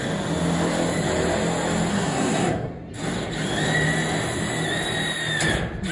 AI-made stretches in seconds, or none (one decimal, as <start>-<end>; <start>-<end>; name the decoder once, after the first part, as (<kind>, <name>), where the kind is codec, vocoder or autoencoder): 1.9-2.7 (codec, SNAC)

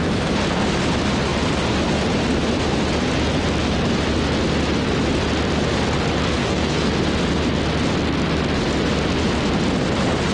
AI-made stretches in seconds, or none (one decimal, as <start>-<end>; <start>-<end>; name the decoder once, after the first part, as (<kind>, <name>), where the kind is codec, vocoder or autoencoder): 6.4-6.9 (codec, SNAC)

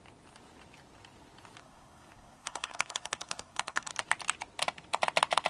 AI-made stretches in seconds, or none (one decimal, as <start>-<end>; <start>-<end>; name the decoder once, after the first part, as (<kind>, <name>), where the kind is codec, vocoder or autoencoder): 1.6-3.9 (codec, SNAC)

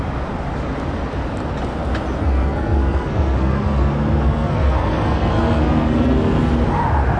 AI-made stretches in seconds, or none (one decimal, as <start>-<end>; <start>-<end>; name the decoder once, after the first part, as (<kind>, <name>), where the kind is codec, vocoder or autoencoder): 2.2-6.5 (codec, SNAC)

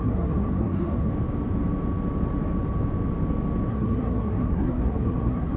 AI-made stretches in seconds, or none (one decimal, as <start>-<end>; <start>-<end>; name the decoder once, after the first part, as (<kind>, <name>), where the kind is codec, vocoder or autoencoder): 0.0-1.1 (codec, SNAC); 3.7-5.6

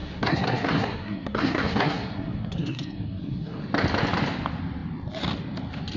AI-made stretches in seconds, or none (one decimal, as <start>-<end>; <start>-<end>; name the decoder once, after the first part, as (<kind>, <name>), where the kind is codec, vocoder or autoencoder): 0.0-3.6 (codec, SNAC)

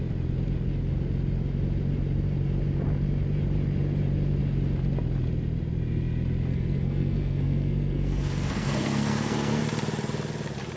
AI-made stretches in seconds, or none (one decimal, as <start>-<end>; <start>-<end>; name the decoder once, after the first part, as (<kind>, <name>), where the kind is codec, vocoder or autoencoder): 6.5-9.6 (codec, SNAC)